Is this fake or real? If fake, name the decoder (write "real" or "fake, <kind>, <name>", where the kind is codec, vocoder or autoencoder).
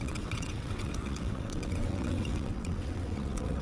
fake, vocoder, WaveNeXt